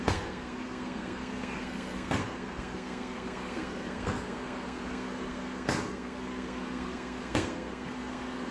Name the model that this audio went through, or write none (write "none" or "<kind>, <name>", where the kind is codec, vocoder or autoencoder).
codec, SNAC